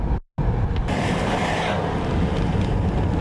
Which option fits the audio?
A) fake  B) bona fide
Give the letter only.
B